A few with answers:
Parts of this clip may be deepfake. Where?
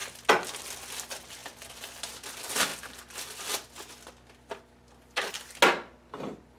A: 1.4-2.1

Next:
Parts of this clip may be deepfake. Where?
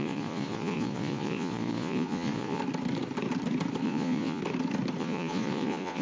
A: 0.0-2.6; 3.8-4.4; 5.0-6.0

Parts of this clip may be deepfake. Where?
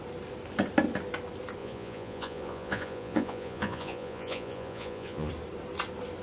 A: 1.6-5.3